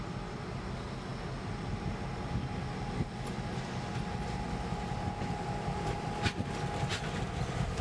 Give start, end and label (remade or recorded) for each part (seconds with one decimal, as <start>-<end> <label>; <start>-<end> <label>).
0.0-5.7 recorded; 5.7-6.4 remade; 6.4-7.8 recorded